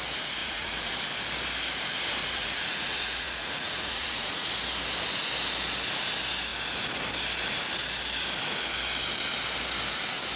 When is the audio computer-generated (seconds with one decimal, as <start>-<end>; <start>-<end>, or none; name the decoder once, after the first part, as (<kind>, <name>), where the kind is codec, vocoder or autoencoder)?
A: 0.4-0.9 (vocoder, Vocos); 2.2-4.5